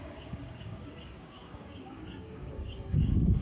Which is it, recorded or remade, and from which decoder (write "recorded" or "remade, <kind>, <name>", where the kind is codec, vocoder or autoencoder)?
remade, codec, DAC